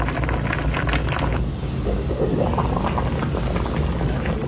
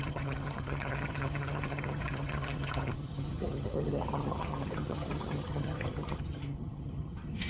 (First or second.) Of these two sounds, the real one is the first